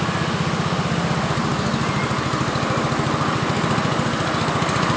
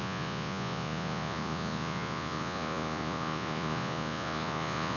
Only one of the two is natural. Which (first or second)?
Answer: first